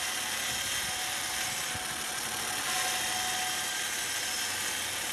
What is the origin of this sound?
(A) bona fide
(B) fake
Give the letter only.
A